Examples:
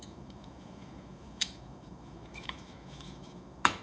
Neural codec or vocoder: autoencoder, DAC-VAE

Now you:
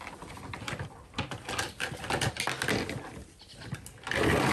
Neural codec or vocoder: none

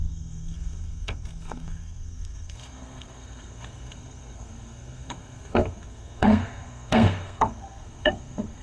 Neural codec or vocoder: codec, SNAC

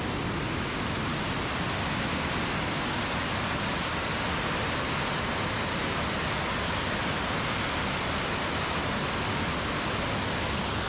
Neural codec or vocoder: none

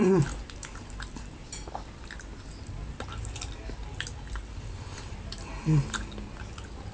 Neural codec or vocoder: none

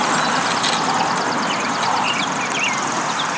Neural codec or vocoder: none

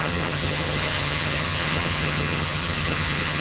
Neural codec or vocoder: vocoder, HiFi-GAN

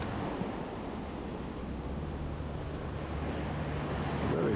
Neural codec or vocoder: none